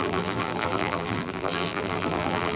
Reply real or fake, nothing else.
fake